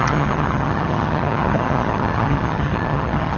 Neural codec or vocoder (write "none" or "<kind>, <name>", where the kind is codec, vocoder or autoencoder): vocoder, HiFi-GAN